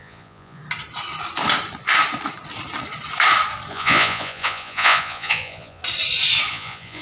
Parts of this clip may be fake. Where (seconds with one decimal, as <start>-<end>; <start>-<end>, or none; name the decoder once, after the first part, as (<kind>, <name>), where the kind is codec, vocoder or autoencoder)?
0.0-0.6 (vocoder, Vocos); 3.7-5.8; 6.5-7.0